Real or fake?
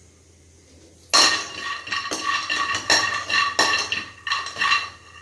real